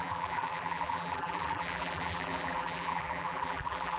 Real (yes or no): no